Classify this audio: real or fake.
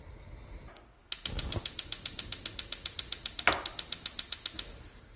real